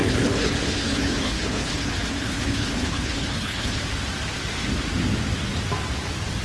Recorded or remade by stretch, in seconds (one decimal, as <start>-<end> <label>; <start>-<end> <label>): 0.0-3.8 remade; 3.8-6.4 recorded

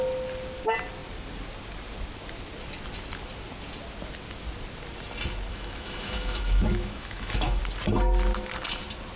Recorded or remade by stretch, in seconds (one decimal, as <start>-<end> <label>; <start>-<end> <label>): 0.0-5.5 recorded; 5.5-7.6 remade; 7.6-9.2 recorded

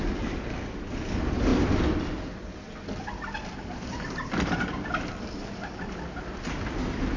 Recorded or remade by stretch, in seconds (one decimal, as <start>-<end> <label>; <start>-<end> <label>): 0.0-7.2 recorded